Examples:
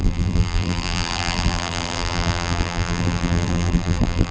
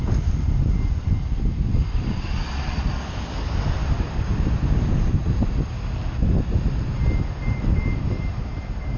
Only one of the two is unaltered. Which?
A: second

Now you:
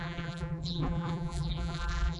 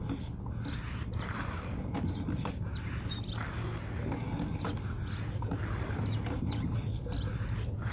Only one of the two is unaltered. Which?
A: second